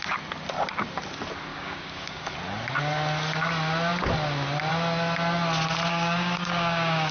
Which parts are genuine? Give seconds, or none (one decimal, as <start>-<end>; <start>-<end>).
0.0-1.5; 2.2-5.9